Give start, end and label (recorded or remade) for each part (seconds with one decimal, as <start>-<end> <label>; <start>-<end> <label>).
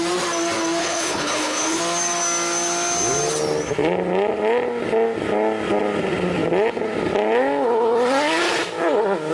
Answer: 0.0-0.8 recorded; 0.8-1.8 remade; 1.8-9.3 recorded